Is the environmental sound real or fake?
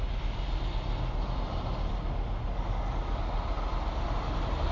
real